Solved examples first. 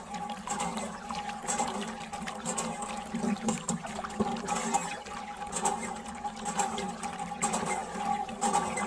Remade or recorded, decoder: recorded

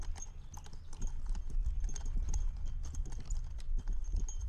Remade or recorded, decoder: recorded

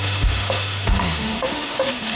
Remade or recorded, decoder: remade, autoencoder, DAC-VAE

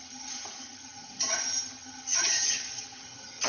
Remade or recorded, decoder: remade, vocoder, HiFi-GAN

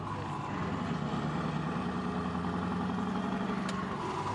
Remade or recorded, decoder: recorded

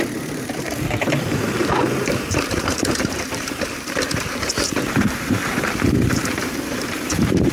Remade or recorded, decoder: remade, vocoder, BigVGAN v2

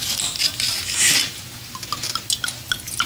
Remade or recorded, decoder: recorded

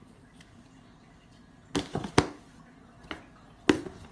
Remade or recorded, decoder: recorded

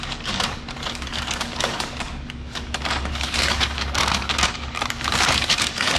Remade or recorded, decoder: remade, codec, DAC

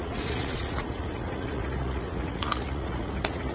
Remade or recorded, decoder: remade, vocoder, Vocos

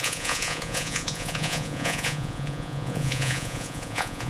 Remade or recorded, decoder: remade, vocoder, Vocos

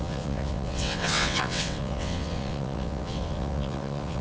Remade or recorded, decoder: remade, vocoder, WaveNeXt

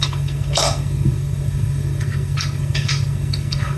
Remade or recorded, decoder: remade, codec, SNAC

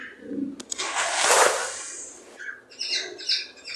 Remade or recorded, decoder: recorded